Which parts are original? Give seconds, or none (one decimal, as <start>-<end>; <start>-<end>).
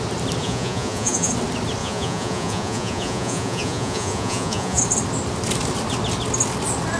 0.0-0.4; 1.3-1.8; 4.8-7.0